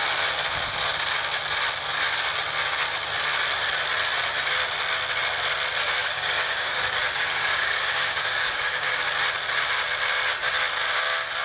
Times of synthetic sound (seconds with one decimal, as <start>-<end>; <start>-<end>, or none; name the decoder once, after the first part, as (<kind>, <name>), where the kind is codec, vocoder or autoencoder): 6.0-9.0 (codec, DAC)